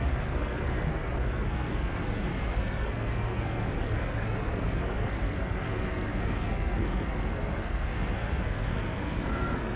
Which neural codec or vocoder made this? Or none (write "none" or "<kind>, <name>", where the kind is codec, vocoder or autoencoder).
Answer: codec, SNAC